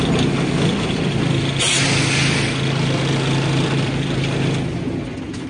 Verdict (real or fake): real